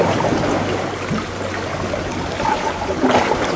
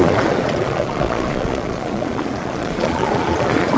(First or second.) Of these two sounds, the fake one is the second